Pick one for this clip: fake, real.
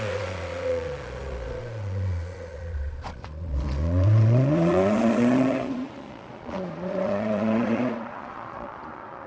fake